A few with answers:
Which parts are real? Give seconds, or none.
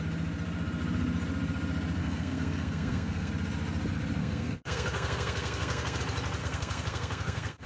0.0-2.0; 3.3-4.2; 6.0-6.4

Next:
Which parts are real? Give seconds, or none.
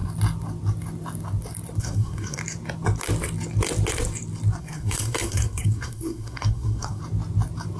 0.0-1.8; 2.4-4.6; 7.0-7.8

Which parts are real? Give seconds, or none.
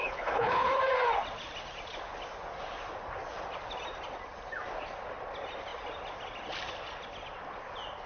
0.8-8.1